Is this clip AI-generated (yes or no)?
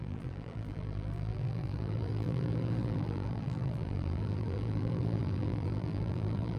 yes